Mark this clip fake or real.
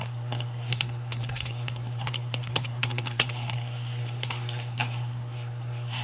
fake